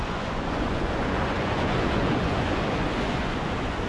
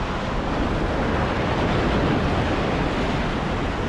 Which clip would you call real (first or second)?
second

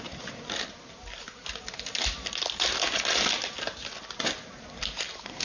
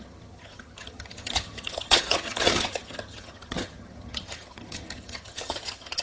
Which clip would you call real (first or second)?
first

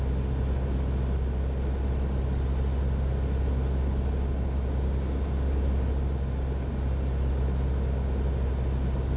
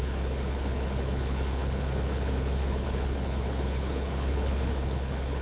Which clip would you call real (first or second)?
first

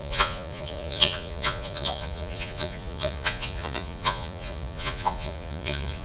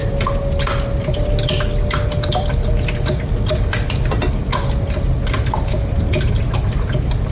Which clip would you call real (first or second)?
second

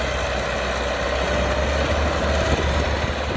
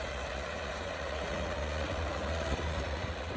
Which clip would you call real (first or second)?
first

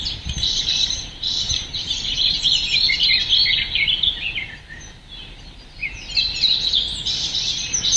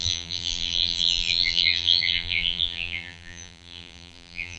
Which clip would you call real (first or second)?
first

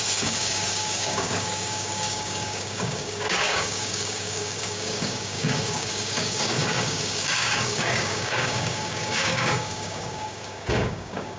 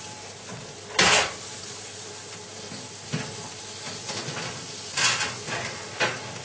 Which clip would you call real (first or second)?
second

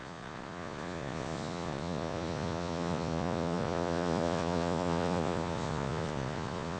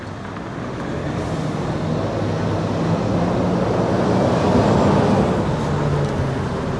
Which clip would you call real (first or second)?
second